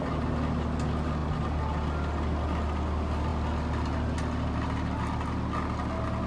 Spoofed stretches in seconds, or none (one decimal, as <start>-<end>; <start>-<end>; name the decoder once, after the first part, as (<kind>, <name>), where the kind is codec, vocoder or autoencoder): none